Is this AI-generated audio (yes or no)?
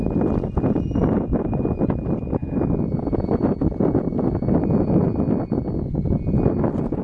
no